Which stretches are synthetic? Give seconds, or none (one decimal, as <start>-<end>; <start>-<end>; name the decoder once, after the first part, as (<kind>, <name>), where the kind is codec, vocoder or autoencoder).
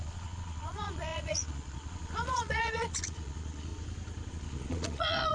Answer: 0.0-3.7 (vocoder, Vocos); 4.3-5.3